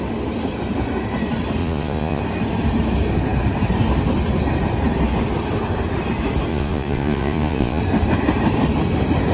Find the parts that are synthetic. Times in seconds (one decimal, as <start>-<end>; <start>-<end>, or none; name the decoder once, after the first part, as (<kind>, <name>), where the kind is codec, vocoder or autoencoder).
1.6-2.2 (vocoder, Vocos); 6.5-7.8